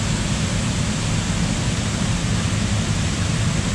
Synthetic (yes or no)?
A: no